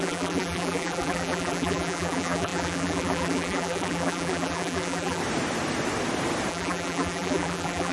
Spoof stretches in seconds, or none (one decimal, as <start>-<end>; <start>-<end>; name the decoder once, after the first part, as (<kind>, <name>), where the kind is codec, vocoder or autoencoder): 0.0-5.2 (vocoder, BigVGAN v2); 6.5-7.9